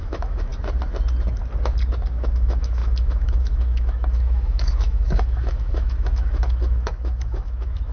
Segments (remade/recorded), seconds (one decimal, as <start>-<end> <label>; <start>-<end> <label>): 0.0-0.5 remade; 0.5-2.1 recorded; 2.1-7.9 remade